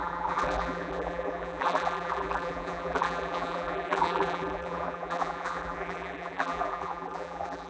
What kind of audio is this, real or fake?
fake